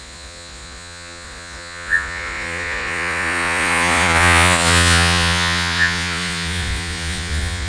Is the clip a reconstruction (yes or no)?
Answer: yes